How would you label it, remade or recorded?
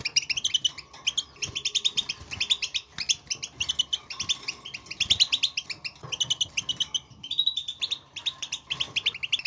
recorded